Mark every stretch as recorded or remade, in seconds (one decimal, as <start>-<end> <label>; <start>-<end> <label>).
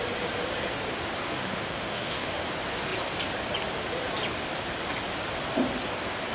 0.0-1.3 recorded; 1.3-2.3 remade; 2.3-6.3 recorded